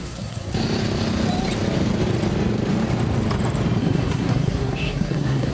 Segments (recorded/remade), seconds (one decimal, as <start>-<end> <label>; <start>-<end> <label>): 0.0-0.5 remade; 0.5-3.8 recorded; 3.8-5.5 remade